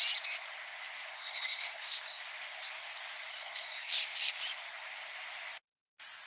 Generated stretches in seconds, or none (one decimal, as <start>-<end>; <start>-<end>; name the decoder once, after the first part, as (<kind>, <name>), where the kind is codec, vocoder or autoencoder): 1.1-2.2 (codec, SNAC); 3.3-4.3